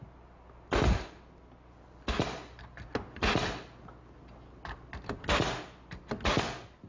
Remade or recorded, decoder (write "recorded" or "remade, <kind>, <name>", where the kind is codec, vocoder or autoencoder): recorded